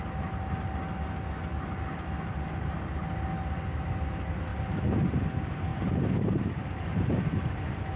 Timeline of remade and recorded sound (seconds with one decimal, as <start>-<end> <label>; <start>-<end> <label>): 0.0-4.5 recorded; 4.5-5.1 remade; 5.1-5.7 recorded; 5.7-7.4 remade; 7.4-8.0 recorded